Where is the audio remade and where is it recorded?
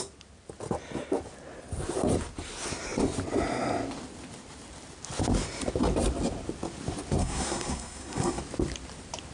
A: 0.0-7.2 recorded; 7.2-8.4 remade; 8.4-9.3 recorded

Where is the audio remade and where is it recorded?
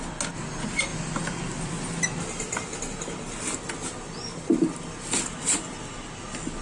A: 0.0-6.6 recorded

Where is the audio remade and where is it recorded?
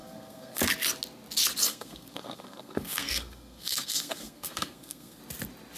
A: 0.0-0.6 remade; 0.6-1.7 recorded; 1.7-5.2 remade; 5.2-5.8 recorded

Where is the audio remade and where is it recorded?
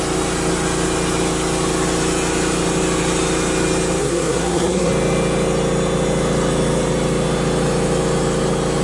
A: 0.0-4.0 recorded; 4.0-4.9 remade; 4.9-8.8 recorded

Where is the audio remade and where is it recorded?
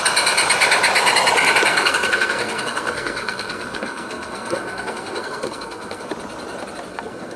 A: 0.0-1.7 recorded; 1.7-6.1 remade; 6.1-6.9 recorded; 6.9-7.4 remade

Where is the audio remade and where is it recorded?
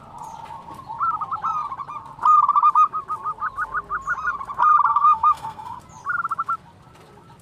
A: 0.0-4.9 recorded; 4.9-5.8 remade; 5.8-7.4 recorded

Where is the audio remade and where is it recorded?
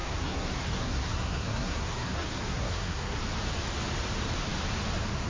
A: 0.0-3.2 remade; 3.2-5.3 recorded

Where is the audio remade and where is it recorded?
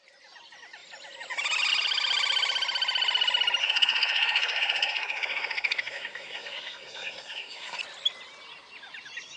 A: 0.0-3.6 recorded; 3.6-7.8 remade; 7.8-9.4 recorded